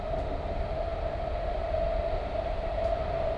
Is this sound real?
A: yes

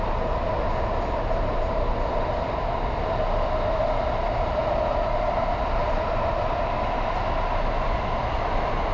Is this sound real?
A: yes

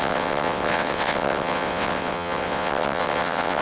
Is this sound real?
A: no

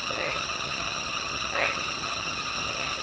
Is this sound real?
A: no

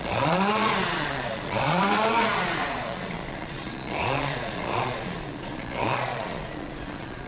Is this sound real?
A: no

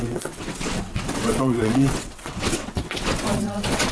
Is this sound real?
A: no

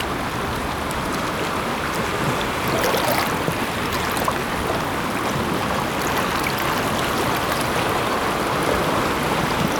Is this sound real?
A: yes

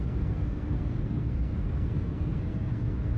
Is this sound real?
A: no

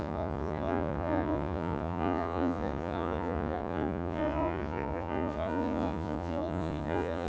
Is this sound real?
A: no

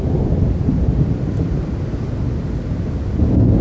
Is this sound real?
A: yes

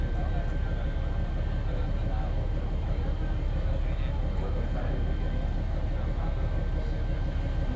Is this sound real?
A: yes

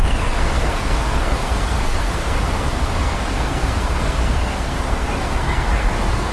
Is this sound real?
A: no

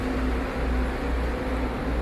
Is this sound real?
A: yes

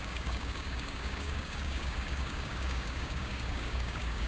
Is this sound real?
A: no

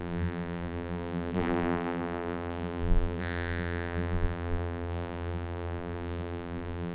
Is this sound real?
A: no